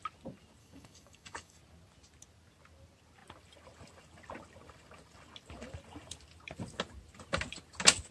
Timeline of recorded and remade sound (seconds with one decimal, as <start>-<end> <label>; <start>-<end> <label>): 0.0-0.6 recorded; 0.6-1.6 remade; 1.6-8.1 recorded

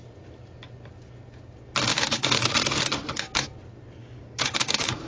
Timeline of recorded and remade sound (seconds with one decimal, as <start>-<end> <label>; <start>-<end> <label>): 0.0-1.9 recorded; 1.9-2.5 remade; 2.5-4.0 recorded; 4.0-5.1 remade

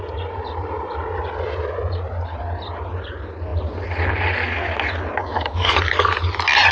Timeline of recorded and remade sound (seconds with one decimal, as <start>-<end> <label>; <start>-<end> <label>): 0.0-5.2 recorded; 5.2-5.9 remade; 5.9-6.7 recorded

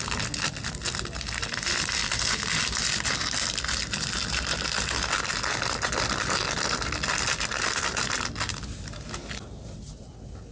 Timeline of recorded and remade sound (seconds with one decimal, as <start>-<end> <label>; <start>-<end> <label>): 0.0-10.5 recorded

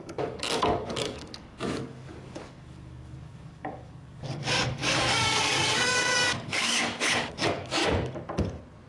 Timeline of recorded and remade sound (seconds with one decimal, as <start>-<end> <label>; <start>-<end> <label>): 0.0-7.8 remade; 7.8-8.9 recorded

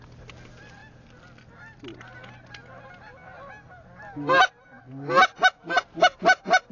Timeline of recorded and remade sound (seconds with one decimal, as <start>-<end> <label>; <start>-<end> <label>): 0.0-6.7 recorded

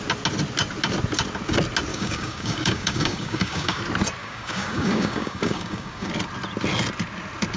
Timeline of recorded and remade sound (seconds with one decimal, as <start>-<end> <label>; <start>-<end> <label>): 0.0-1.9 recorded; 1.9-3.8 remade; 3.8-4.2 recorded; 4.2-6.1 remade; 6.1-7.6 recorded